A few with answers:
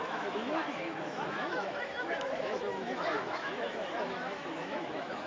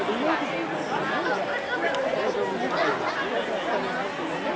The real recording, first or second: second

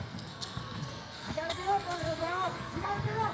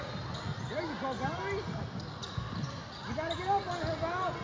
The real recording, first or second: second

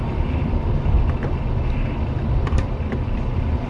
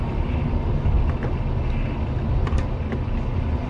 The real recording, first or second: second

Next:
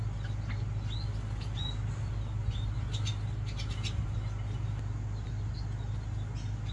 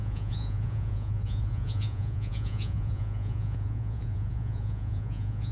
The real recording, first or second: first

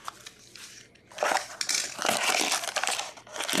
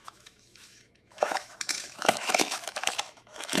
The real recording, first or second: first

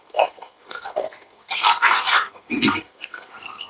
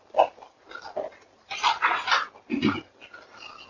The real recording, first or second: second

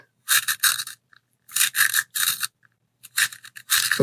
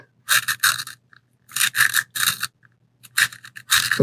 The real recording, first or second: second